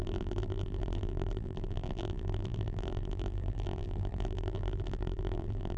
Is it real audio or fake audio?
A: fake